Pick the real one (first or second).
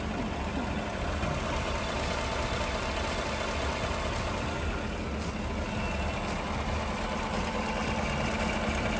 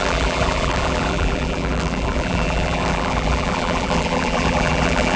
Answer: first